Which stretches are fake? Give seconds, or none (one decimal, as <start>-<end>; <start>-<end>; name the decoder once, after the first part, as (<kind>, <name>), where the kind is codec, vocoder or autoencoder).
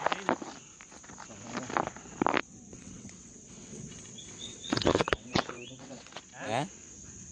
2.4-6.2 (vocoder, WaveNeXt)